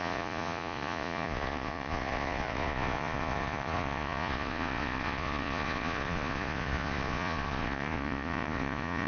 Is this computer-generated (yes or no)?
yes